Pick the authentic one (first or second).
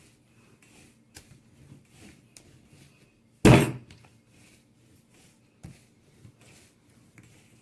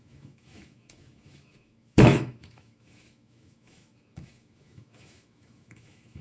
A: first